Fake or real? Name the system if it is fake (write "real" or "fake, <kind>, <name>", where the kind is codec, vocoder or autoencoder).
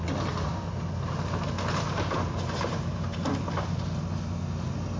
real